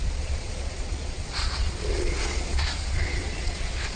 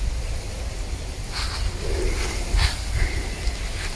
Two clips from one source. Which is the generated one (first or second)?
first